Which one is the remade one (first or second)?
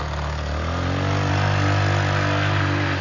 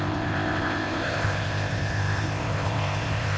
second